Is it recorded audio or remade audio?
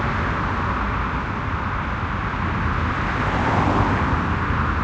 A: recorded